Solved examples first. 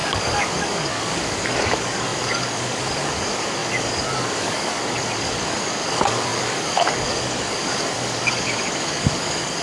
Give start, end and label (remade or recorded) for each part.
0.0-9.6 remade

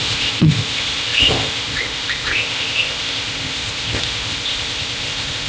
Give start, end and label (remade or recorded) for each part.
0.0-5.5 remade

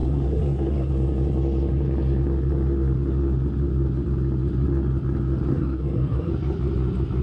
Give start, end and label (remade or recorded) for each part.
0.0-0.9 remade; 0.9-5.5 recorded; 5.5-6.3 remade; 6.3-7.2 recorded

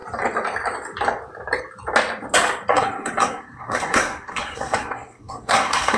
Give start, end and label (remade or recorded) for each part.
0.0-2.7 recorded; 2.7-6.0 remade

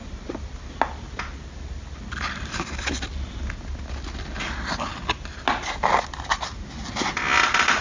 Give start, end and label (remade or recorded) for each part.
0.0-7.8 recorded

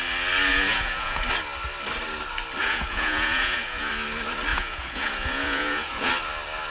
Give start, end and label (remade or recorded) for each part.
0.0-0.5 recorded; 0.5-1.2 remade; 1.2-2.6 recorded; 2.6-3.9 remade; 3.9-4.5 recorded; 4.5-6.1 remade; 6.1-6.7 recorded

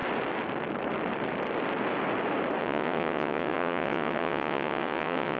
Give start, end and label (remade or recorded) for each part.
0.0-2.6 recorded; 2.6-5.4 remade